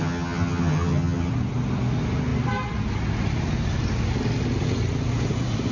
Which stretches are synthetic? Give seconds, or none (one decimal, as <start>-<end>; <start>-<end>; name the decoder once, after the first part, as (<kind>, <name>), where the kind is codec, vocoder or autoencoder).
0.0-1.3 (vocoder, HiFi-GAN)

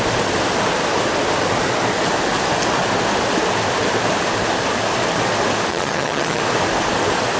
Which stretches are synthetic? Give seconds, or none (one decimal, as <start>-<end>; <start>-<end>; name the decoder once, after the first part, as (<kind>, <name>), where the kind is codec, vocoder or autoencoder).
5.7-6.4 (vocoder, HiFi-GAN)